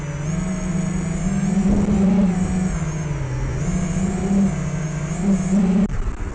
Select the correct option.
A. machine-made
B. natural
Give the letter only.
B